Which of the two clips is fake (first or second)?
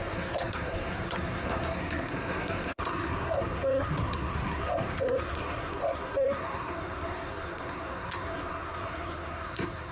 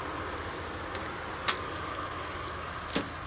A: first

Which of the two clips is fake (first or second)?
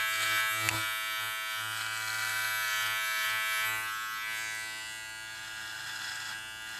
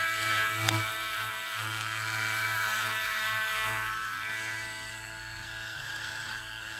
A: second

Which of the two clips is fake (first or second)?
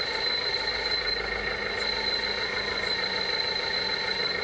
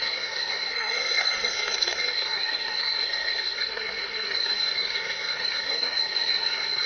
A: second